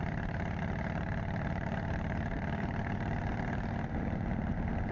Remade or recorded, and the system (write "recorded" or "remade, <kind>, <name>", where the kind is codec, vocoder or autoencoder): remade, vocoder, BigVGAN v2